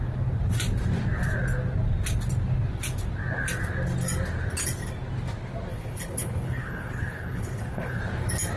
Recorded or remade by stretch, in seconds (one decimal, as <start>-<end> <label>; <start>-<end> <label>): 0.0-5.7 recorded; 5.7-8.0 remade; 8.0-8.6 recorded